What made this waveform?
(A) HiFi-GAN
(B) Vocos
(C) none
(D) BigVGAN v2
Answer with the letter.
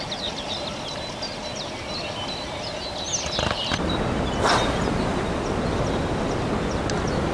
C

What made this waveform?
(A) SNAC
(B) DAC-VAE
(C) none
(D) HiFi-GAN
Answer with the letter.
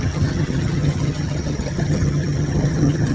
D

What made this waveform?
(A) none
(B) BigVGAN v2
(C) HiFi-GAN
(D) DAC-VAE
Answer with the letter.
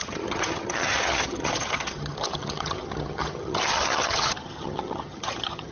C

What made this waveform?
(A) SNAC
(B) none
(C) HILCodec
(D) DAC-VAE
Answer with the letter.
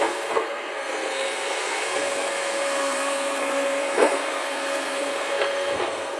A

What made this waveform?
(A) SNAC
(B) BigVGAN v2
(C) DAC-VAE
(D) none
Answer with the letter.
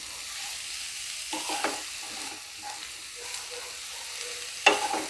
D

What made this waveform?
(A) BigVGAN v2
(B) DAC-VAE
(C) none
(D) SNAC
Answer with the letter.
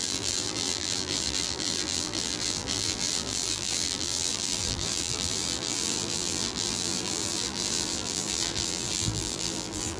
A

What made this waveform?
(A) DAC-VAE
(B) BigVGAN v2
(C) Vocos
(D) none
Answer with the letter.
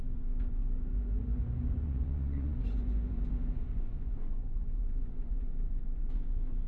C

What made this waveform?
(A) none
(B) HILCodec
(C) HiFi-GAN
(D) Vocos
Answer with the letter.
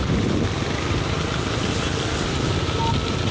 A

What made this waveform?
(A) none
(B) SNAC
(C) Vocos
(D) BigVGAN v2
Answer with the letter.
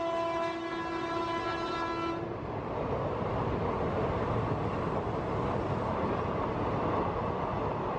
A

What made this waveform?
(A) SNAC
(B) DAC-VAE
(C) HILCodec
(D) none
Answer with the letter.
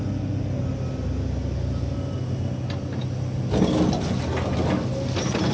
D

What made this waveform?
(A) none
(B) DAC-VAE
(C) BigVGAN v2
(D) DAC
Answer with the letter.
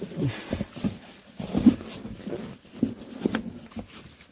A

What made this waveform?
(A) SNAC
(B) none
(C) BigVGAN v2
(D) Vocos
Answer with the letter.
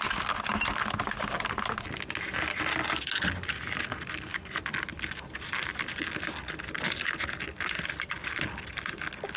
B